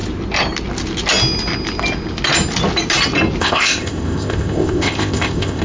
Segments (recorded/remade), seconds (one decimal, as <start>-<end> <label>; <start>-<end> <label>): 0.0-3.4 recorded; 3.4-5.6 remade